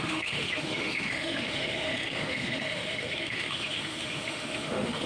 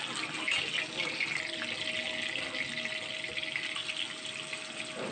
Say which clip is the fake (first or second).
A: first